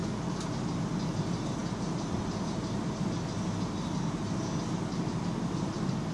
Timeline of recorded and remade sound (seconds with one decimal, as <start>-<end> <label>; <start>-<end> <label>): 0.0-6.1 recorded